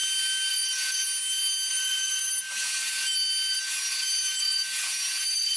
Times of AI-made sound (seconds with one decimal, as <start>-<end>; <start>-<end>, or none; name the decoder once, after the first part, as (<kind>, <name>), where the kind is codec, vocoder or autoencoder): 0.5-1.0 (vocoder, Vocos); 1.7-2.2; 4.4-5.6